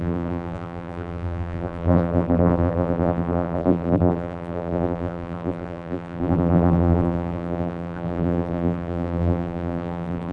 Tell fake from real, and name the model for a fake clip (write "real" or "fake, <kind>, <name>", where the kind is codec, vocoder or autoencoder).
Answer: fake, vocoder, BigVGAN v2